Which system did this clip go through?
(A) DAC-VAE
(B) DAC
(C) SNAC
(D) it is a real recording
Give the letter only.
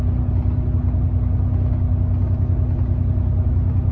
D